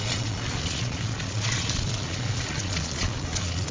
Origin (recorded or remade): remade